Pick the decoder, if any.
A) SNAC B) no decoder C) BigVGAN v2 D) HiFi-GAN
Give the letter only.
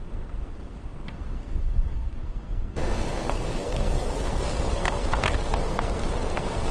A